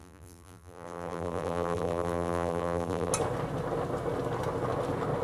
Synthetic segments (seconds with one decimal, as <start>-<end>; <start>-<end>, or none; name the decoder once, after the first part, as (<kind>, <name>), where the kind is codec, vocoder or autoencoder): 0.0-3.1 (vocoder, BigVGAN v2)